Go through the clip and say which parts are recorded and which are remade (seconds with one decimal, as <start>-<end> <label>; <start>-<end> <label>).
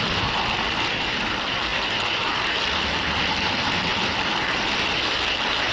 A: 0.0-5.7 recorded